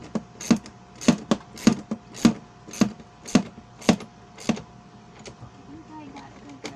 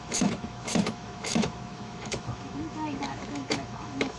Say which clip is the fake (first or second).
second